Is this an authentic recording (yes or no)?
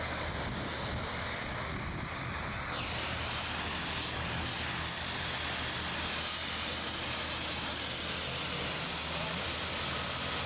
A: yes